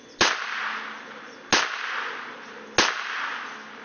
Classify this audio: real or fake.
real